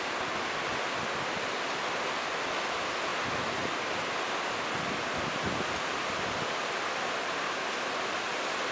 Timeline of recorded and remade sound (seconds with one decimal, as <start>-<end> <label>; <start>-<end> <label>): 0.0-8.7 recorded